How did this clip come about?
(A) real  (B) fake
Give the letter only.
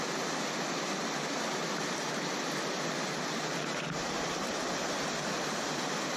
A